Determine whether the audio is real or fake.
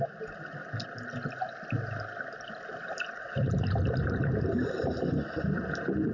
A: real